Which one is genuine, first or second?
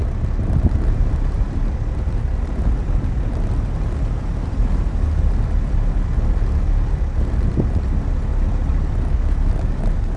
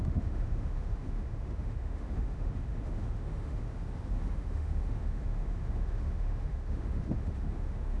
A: first